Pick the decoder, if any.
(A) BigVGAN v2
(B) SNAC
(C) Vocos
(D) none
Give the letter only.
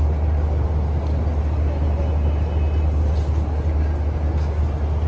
D